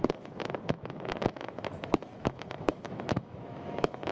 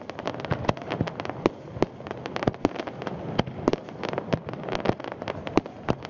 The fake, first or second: first